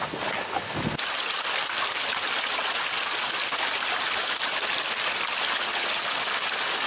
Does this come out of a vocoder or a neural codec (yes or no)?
no